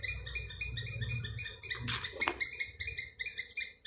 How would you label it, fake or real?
real